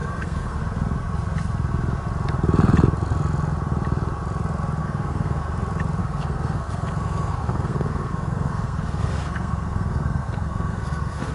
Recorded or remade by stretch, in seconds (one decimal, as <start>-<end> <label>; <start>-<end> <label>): 0.0-0.6 remade; 0.6-4.8 recorded; 4.8-5.4 remade; 5.4-6.0 recorded; 6.0-11.3 remade